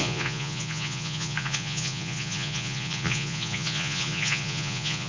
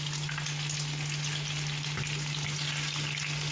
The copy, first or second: first